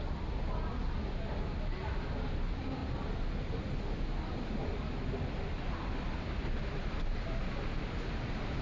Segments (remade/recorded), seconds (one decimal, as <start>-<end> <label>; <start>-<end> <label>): 0.0-8.6 recorded